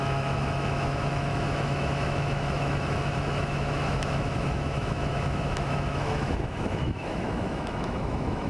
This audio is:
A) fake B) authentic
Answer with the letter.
A